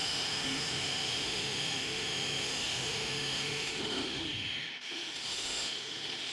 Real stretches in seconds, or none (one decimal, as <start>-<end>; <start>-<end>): none